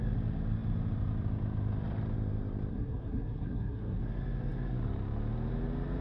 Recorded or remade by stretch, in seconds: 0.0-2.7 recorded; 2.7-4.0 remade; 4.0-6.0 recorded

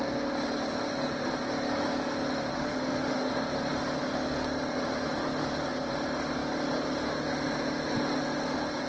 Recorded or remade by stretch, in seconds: 0.0-2.5 recorded; 2.5-3.3 remade; 3.3-8.9 recorded